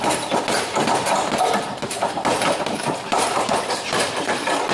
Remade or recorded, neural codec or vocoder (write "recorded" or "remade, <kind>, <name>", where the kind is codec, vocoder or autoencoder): recorded